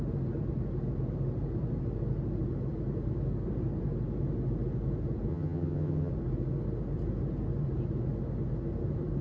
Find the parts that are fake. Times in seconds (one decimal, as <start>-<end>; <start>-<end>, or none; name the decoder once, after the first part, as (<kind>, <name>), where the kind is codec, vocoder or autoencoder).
5.3-6.1 (vocoder, HiFi-GAN)